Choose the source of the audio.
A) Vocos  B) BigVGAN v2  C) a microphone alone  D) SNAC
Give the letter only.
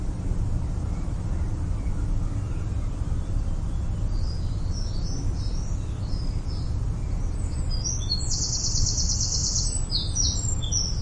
C